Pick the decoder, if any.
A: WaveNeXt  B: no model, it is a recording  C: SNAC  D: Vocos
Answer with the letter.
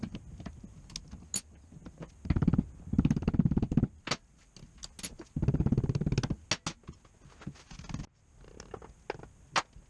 B